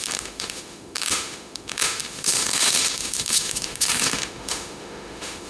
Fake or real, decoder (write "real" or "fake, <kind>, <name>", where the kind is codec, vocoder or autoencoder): fake, autoencoder, DAC-VAE